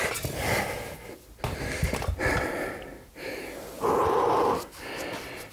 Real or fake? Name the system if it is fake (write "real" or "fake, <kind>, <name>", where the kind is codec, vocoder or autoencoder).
real